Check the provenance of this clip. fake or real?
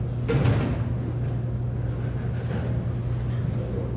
real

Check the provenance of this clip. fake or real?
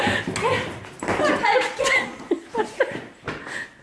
real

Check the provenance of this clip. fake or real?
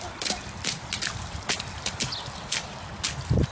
real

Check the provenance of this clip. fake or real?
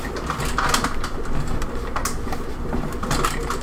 real